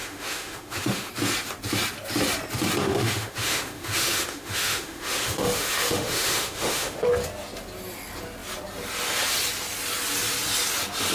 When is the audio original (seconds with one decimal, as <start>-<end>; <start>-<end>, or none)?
1.1-2.8; 7.1-11.1